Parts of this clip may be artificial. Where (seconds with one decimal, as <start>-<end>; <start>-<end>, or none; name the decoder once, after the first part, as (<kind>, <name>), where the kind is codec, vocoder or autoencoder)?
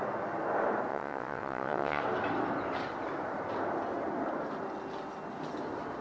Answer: 0.9-2.0 (vocoder, WaveNeXt)